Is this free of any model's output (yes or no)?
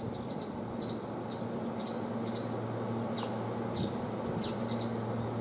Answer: yes